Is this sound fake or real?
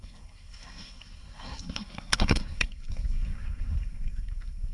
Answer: fake